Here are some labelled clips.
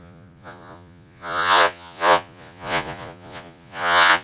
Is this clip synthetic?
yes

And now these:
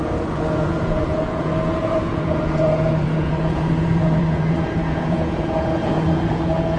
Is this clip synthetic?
yes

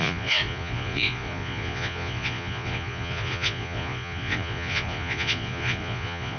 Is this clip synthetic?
yes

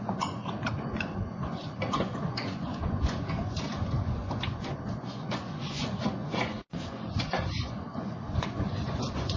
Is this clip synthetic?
yes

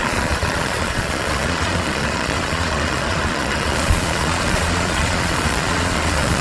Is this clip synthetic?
yes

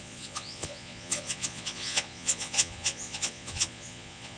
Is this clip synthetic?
yes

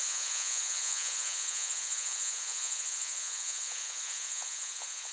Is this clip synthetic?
yes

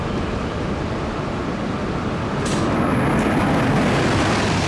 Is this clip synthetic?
no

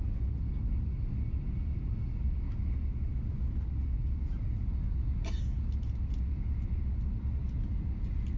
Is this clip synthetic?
no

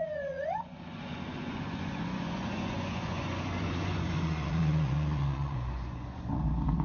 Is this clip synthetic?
yes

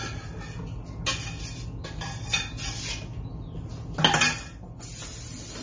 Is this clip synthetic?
no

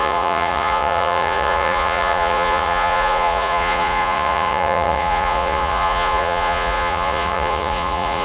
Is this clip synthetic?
yes